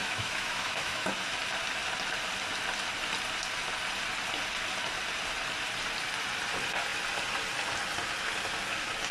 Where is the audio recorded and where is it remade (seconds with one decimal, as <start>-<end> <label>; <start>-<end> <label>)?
0.0-1.1 remade; 1.1-9.1 recorded